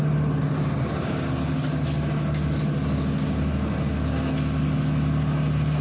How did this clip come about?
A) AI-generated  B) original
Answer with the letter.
B